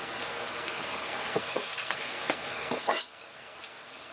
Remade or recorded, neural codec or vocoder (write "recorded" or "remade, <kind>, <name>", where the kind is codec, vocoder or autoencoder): remade, codec, SNAC